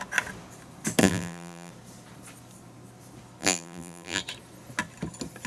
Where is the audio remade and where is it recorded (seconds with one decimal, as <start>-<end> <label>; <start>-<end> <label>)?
0.0-1.0 recorded; 1.0-1.7 remade; 1.7-3.4 recorded; 3.4-4.2 remade; 4.2-5.5 recorded